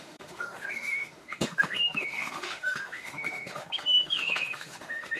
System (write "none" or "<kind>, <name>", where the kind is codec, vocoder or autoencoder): autoencoder, DAC-VAE